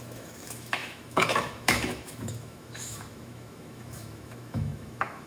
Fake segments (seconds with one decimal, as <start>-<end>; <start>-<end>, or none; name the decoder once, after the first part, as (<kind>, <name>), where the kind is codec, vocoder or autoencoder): 0.0-5.3 (autoencoder, DAC-VAE)